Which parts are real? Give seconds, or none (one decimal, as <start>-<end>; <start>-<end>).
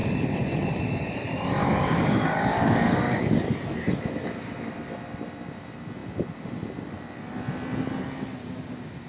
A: 0.0-1.6; 3.4-8.4